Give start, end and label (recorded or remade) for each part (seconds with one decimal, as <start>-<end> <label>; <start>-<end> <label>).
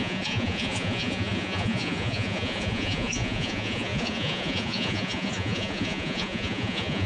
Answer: 0.0-7.1 remade